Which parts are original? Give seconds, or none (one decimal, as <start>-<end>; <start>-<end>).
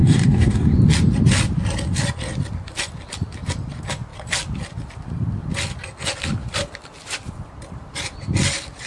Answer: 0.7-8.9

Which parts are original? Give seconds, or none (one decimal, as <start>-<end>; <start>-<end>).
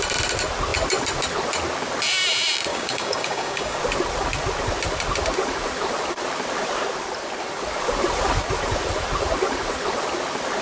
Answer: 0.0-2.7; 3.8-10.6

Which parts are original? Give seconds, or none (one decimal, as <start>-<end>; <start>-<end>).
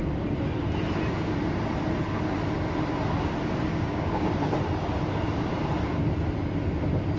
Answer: 0.0-3.7; 4.3-7.2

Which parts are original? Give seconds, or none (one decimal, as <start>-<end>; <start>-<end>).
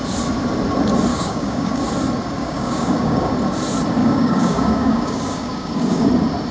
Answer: 0.0-1.1; 1.8-2.4; 3.3-4.0; 6.1-6.5